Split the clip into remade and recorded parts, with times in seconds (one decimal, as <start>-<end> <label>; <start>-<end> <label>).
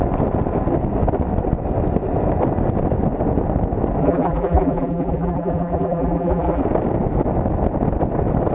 0.0-4.0 recorded; 4.0-6.6 remade; 6.6-8.5 recorded